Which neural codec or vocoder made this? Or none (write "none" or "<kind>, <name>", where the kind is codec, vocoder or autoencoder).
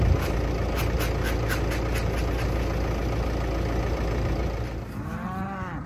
none